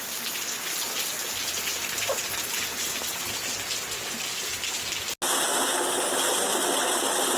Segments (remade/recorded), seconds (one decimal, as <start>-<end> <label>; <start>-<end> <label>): 0.0-7.4 recorded